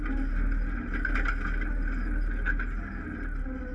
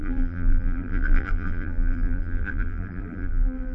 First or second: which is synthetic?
second